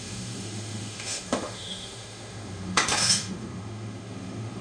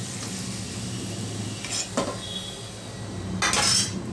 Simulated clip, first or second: first